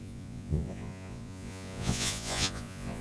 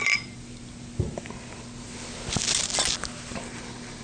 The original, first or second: second